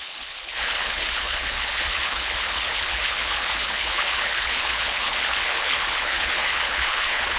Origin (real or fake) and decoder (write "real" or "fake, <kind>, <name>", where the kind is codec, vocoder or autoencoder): fake, codec, HILCodec